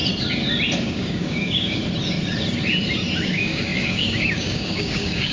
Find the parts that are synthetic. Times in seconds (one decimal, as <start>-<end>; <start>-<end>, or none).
0.8-1.8; 3.2-5.3

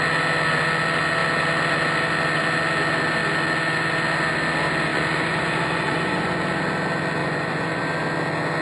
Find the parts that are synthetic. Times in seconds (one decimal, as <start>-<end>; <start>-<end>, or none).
4.9-6.4; 7.2-7.8

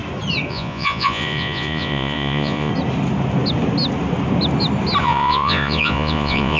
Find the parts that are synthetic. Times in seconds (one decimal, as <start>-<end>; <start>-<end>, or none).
0.5-2.7; 5.0-6.6

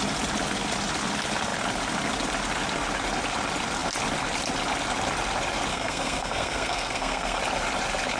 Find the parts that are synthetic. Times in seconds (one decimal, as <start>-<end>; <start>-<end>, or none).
5.7-7.4